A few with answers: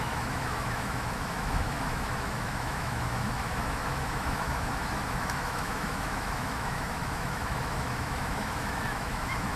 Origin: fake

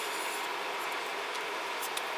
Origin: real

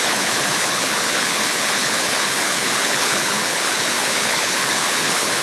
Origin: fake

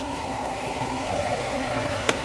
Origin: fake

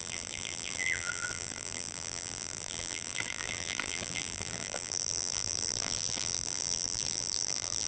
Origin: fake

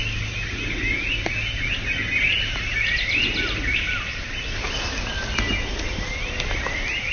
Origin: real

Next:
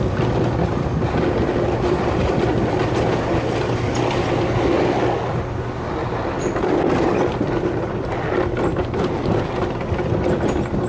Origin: real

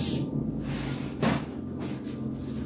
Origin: real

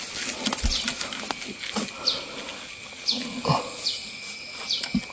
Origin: real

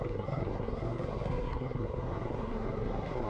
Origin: fake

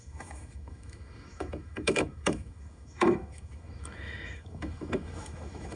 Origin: fake